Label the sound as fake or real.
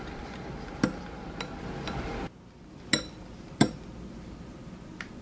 real